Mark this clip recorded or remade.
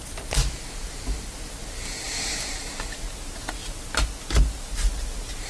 recorded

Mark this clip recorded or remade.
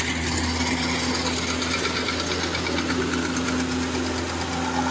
recorded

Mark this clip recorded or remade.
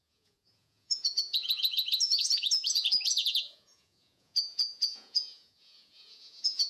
remade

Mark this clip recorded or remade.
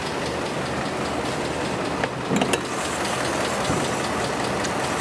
recorded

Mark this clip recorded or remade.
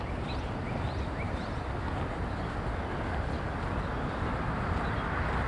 recorded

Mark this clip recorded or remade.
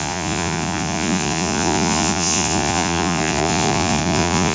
remade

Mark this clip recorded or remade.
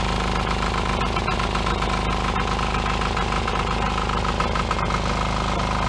recorded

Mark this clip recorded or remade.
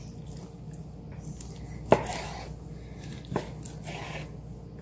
recorded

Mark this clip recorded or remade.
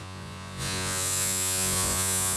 remade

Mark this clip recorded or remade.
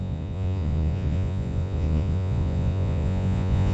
remade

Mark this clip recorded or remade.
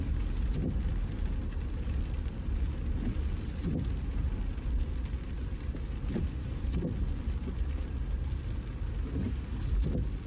recorded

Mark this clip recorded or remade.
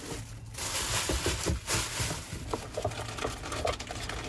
recorded